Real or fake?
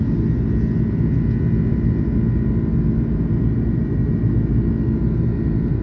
real